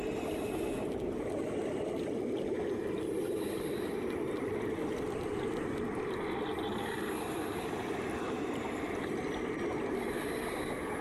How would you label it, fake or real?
real